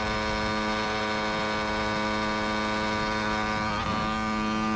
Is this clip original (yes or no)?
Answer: yes